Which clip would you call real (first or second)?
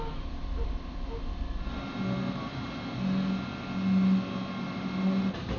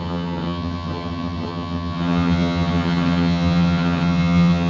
first